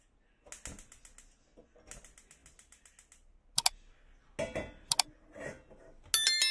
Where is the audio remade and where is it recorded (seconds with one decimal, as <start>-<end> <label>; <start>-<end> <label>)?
0.0-6.5 recorded

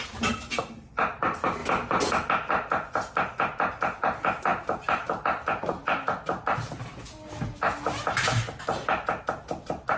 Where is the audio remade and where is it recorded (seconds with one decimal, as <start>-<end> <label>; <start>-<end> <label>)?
0.0-10.0 recorded

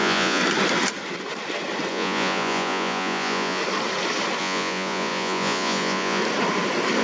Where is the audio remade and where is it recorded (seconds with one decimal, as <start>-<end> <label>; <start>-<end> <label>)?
0.0-0.4 remade; 0.4-1.9 recorded; 1.9-3.6 remade; 3.6-4.4 recorded; 4.4-6.2 remade; 6.2-7.0 recorded

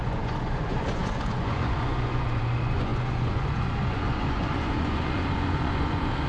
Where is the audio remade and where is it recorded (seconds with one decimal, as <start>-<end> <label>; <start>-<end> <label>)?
0.0-6.3 remade

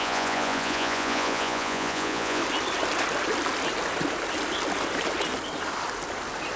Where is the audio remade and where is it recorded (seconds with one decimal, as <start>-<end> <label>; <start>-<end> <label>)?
0.0-2.4 remade; 2.4-6.6 recorded

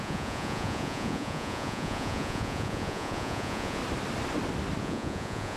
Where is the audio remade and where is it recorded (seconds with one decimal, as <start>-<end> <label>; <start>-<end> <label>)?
0.0-3.8 remade; 3.8-4.8 recorded; 4.8-5.6 remade

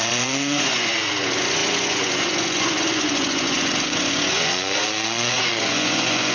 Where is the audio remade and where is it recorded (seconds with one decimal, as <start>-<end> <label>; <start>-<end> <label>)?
0.0-6.3 remade

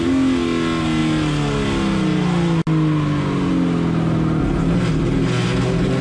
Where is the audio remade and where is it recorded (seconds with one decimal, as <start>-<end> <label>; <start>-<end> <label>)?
0.0-6.0 recorded